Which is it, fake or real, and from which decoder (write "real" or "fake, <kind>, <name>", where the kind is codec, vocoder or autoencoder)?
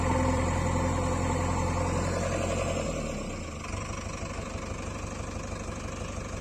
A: real